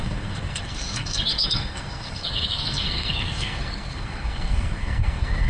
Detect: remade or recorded remade